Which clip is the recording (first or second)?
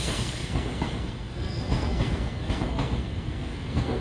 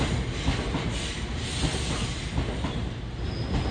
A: second